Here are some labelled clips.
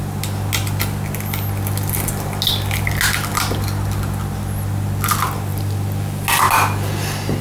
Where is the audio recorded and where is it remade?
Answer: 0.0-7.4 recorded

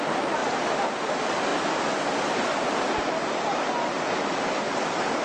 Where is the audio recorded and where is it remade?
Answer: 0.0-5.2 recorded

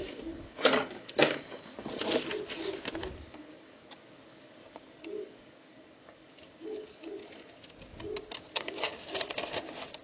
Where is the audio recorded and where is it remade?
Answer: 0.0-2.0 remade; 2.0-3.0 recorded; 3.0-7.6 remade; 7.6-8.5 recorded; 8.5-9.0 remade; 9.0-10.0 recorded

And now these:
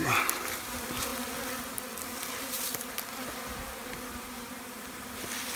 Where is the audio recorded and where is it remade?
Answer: 0.0-5.6 recorded